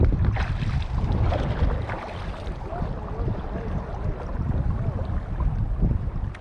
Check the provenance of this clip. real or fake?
real